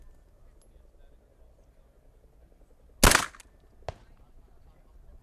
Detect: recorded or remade recorded